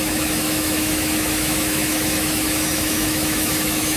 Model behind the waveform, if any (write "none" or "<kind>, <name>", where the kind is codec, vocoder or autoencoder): autoencoder, DAC-VAE